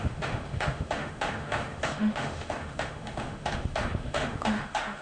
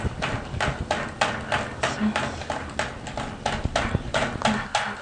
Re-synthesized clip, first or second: first